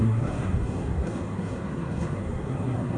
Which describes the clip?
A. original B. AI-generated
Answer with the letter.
B